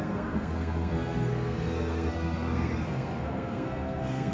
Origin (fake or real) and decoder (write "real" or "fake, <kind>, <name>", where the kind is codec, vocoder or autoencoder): fake, codec, SNAC